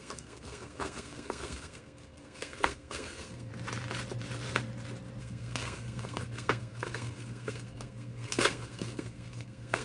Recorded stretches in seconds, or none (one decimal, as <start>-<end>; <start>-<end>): 3.5-5.2